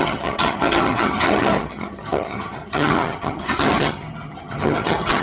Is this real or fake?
fake